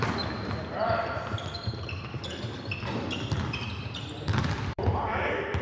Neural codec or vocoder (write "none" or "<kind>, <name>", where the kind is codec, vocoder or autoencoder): vocoder, BigVGAN v2